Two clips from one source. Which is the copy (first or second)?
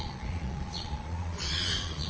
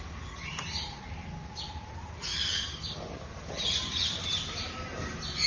first